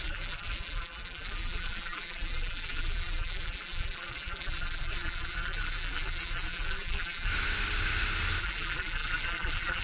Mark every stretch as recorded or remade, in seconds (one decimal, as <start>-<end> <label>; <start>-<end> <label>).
0.0-7.3 remade; 7.3-8.4 recorded; 8.4-9.8 remade

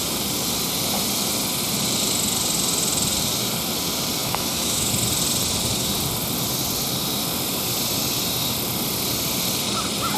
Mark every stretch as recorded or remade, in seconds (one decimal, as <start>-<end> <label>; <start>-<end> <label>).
0.0-4.2 recorded; 4.2-4.9 remade; 4.9-10.2 recorded

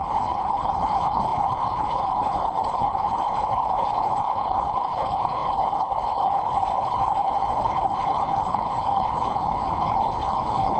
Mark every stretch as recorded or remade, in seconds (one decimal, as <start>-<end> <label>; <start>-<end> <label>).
0.0-10.8 remade

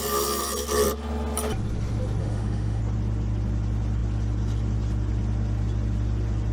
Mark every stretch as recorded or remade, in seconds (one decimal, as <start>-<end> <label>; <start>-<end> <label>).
0.0-2.2 recorded; 2.2-2.8 remade; 2.8-6.5 recorded

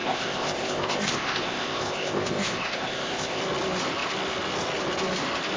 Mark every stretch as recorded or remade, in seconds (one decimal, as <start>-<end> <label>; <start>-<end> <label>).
0.0-3.4 remade; 3.4-5.6 recorded

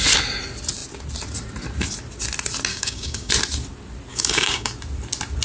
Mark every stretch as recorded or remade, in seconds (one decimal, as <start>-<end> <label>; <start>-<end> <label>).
0.0-2.7 recorded; 2.7-3.3 remade; 3.3-4.1 recorded; 4.1-4.7 remade; 4.7-5.4 recorded

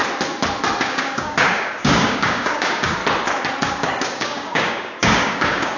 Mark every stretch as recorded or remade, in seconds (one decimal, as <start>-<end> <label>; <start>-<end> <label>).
0.0-0.8 recorded; 0.8-3.0 remade; 3.0-3.6 recorded; 3.6-5.8 remade

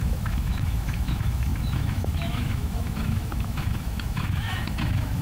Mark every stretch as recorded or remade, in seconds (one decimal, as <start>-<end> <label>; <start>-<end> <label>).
0.0-5.2 remade